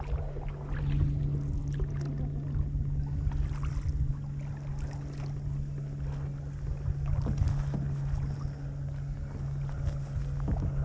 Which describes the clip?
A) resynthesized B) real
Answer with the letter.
B